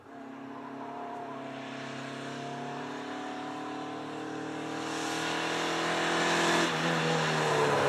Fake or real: real